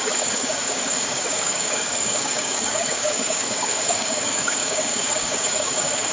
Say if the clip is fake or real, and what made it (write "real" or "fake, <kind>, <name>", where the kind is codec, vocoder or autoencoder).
fake, codec, DAC